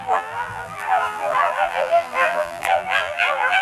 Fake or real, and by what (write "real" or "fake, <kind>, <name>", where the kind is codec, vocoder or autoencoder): fake, vocoder, BigVGAN v2